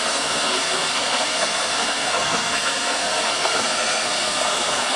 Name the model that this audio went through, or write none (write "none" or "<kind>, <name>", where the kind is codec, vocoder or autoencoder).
codec, SNAC